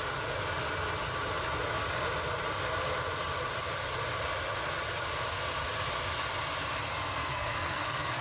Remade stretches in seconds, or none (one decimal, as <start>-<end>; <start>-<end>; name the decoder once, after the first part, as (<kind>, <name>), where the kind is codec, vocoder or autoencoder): 7.2-8.2 (codec, SNAC)